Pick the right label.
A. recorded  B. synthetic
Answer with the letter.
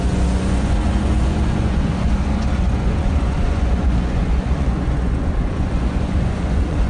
B